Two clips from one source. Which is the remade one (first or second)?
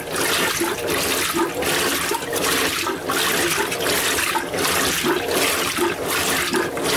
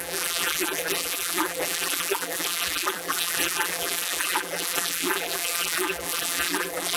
second